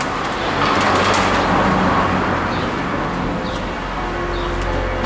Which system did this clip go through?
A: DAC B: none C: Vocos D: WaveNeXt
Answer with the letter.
B